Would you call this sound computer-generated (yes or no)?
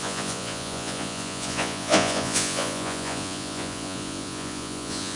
yes